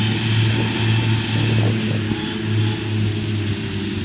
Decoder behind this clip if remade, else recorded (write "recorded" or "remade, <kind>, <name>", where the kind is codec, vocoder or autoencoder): recorded